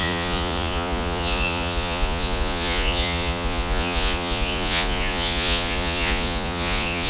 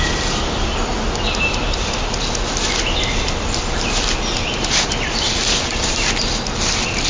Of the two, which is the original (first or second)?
second